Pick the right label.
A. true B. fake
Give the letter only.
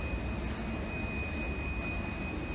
A